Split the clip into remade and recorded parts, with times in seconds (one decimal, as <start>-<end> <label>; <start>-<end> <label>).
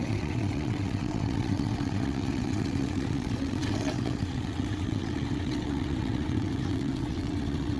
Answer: 0.0-7.8 remade